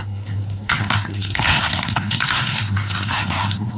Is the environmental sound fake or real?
fake